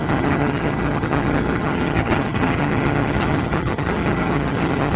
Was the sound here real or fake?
fake